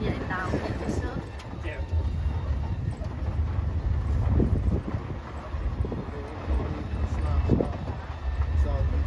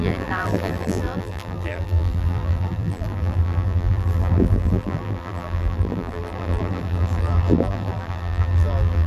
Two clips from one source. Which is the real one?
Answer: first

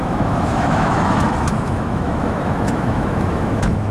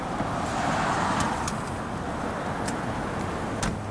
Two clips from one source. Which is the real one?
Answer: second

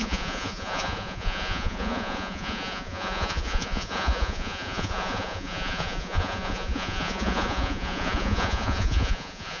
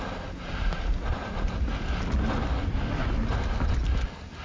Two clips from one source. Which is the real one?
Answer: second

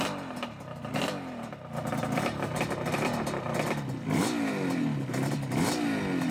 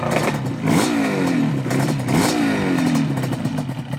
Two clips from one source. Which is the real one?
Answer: first